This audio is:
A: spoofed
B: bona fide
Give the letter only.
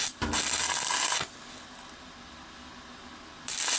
B